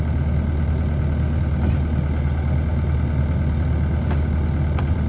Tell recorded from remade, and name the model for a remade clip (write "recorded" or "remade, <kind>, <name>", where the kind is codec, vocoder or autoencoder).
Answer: recorded